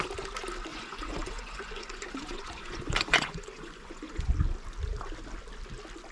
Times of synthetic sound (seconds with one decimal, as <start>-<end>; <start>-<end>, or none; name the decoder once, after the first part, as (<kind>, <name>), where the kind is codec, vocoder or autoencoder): 0.7-4.3 (vocoder, Vocos)